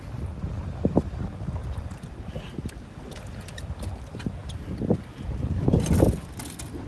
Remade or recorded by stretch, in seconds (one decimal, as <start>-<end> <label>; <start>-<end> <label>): 0.0-6.9 recorded